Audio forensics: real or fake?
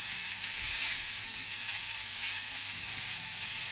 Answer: fake